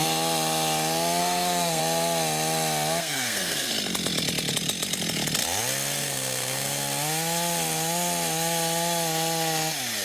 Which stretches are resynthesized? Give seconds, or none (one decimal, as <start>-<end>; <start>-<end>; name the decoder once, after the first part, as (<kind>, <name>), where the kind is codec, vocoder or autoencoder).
1.2-1.8 (codec, SNAC); 3.0-3.7; 6.0-6.8